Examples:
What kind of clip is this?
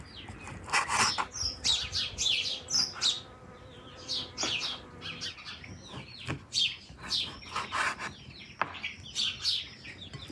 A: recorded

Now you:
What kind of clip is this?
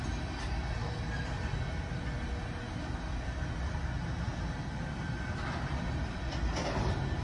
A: recorded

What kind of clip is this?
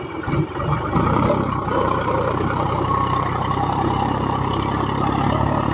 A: remade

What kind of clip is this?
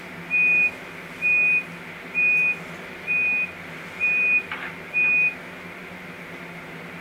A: recorded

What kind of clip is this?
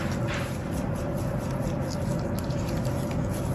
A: recorded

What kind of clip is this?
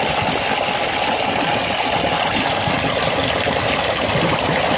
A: recorded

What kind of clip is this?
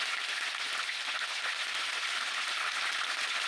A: recorded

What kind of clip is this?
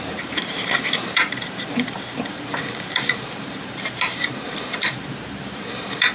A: remade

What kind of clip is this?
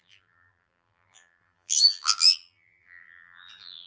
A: remade